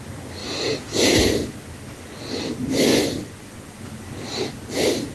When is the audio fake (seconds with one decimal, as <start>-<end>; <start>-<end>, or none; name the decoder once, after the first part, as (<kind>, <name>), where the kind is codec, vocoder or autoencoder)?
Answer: 2.9-3.8 (vocoder, Vocos)